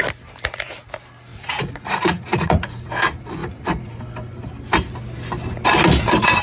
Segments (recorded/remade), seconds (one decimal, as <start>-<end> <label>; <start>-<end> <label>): 0.0-1.3 recorded; 1.3-2.9 remade; 2.9-3.4 recorded; 3.4-4.0 remade; 4.0-6.4 recorded